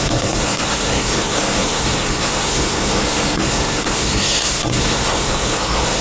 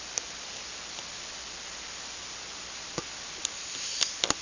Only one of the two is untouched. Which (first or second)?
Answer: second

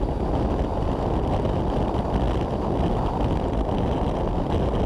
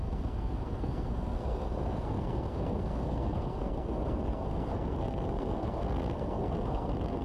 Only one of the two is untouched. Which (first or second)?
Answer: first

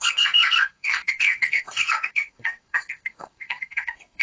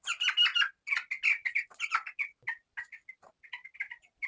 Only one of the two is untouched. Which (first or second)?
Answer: second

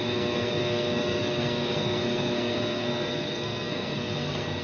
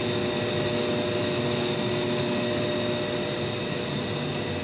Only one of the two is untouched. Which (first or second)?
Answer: second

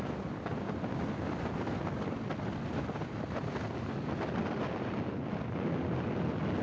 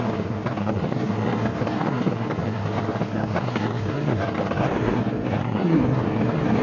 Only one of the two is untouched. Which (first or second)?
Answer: first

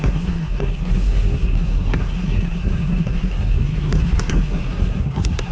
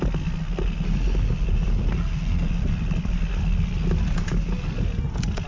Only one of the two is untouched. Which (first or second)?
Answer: second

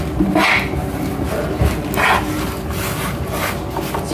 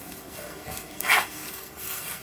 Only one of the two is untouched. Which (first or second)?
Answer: first